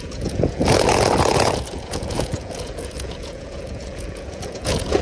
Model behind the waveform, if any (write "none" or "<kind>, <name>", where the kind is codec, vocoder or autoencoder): vocoder, Vocos